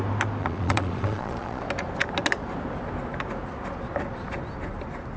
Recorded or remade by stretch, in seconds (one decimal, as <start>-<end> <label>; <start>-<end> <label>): 0.0-0.4 recorded; 0.4-1.6 remade; 1.6-5.2 recorded